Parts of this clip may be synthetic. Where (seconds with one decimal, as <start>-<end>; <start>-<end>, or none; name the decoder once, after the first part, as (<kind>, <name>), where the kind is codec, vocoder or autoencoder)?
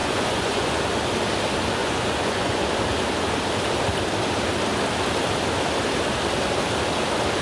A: 0.0-0.8 (vocoder, Vocos); 1.8-2.7